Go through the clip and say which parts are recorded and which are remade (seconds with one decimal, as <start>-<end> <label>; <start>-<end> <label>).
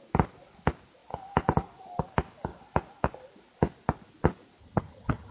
0.0-4.6 recorded; 4.6-5.3 remade